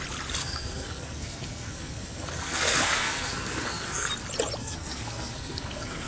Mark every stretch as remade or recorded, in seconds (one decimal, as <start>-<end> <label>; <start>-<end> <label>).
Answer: 0.0-0.4 recorded; 0.4-4.1 remade; 4.1-4.6 recorded; 4.6-6.1 remade